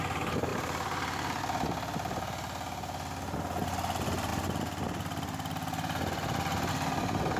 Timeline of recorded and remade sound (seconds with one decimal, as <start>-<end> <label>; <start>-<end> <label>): 0.0-0.5 recorded; 0.5-1.4 remade; 1.4-7.4 recorded